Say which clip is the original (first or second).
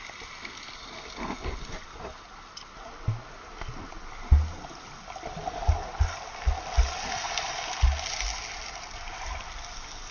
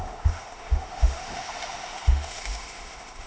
first